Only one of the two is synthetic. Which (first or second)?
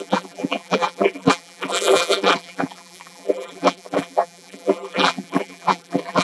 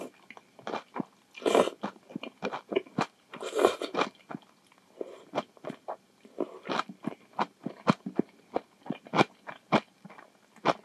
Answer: first